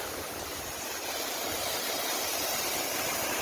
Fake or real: real